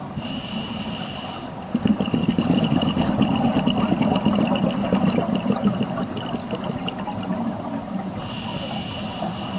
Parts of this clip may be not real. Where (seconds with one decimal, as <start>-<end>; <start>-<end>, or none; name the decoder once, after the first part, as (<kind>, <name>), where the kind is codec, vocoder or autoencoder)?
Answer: 2.2-3.1 (codec, DAC)